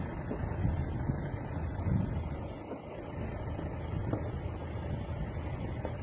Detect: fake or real real